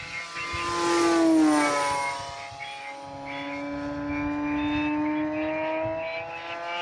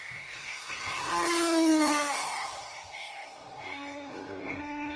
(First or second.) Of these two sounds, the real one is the first